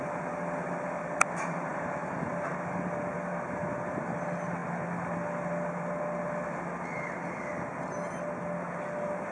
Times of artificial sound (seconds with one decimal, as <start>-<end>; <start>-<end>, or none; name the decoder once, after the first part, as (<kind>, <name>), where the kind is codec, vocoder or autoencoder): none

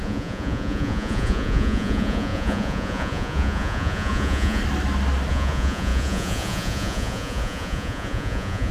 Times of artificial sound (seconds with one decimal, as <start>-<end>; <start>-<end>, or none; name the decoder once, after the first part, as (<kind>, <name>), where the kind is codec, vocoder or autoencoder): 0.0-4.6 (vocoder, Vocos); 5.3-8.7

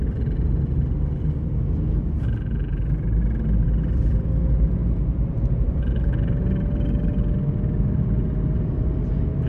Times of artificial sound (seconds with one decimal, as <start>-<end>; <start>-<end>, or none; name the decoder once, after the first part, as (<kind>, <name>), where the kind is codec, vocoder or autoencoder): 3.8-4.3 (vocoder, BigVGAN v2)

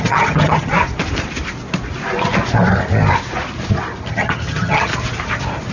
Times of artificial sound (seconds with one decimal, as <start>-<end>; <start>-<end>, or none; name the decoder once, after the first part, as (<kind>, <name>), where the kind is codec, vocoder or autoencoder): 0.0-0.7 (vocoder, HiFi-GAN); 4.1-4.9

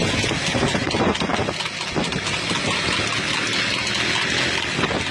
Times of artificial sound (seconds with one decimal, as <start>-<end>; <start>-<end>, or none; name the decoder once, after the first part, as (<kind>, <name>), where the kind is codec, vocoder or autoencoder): none